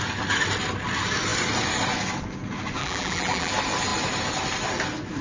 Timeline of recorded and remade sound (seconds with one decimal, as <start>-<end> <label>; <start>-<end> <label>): 0.0-2.8 recorded; 2.8-3.5 remade; 3.5-5.2 recorded